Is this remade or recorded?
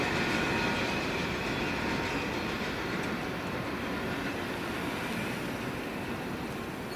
recorded